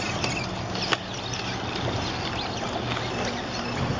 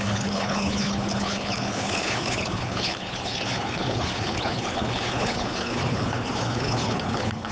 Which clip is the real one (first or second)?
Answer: first